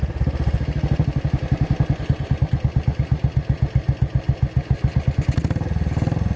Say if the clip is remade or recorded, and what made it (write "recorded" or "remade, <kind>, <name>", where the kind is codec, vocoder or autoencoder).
recorded